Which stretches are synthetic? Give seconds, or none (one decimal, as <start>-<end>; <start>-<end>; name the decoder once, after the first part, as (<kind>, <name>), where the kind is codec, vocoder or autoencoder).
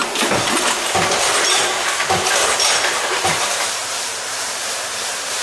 3.2-5.4 (vocoder, BigVGAN v2)